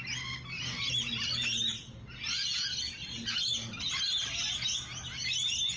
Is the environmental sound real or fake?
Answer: real